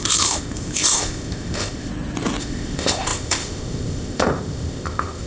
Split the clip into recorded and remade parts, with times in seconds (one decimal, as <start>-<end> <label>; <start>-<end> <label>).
0.0-1.9 remade; 1.9-2.4 recorded; 2.4-5.3 remade